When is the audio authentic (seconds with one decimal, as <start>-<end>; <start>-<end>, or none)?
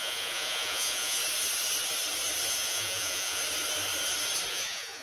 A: 1.2-2.5; 3.4-4.5